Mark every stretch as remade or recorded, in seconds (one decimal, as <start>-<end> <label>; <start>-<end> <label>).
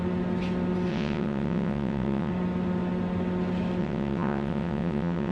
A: 0.0-0.9 recorded; 0.9-2.3 remade; 2.3-3.8 recorded; 3.8-5.3 remade